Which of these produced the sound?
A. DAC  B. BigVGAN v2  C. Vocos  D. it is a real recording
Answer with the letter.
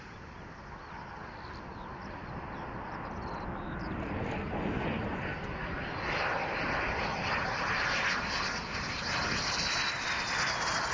D